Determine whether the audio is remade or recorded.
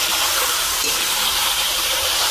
remade